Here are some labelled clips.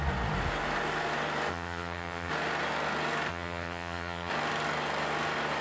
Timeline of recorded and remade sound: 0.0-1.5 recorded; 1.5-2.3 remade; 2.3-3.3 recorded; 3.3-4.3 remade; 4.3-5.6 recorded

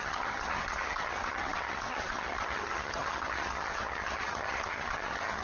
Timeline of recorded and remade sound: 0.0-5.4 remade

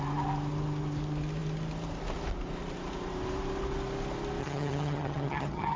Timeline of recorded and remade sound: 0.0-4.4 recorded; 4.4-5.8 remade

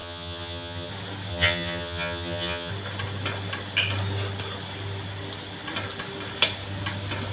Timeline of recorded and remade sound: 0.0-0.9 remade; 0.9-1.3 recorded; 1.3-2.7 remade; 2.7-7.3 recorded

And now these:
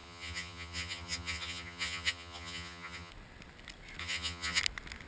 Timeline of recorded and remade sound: 0.0-3.1 remade; 3.1-4.0 recorded; 4.0-4.6 remade; 4.6-5.1 recorded